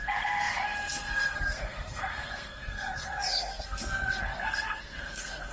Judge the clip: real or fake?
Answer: fake